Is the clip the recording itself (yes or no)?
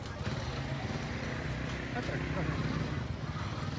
yes